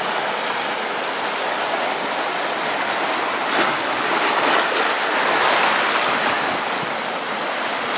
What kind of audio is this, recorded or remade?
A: recorded